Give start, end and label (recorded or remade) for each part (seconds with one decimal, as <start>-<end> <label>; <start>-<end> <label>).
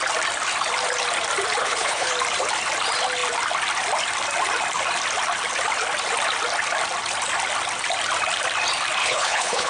0.0-1.6 recorded; 1.6-2.1 remade; 2.1-9.0 recorded; 9.0-9.7 remade